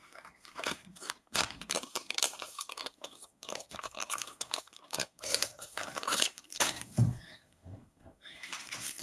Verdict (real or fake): fake